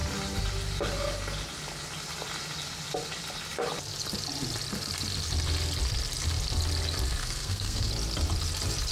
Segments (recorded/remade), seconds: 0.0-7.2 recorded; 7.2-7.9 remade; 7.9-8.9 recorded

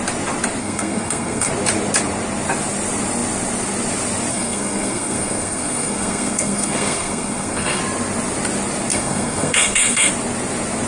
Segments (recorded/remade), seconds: 0.0-0.6 recorded; 0.6-1.5 remade; 1.5-4.3 recorded; 4.3-7.8 remade; 7.8-8.9 recorded; 8.9-10.1 remade; 10.1-10.9 recorded